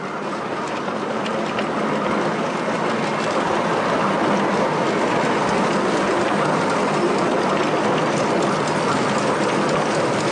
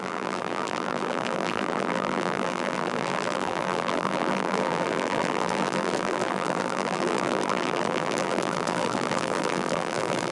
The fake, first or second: second